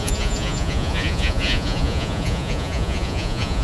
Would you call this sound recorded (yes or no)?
no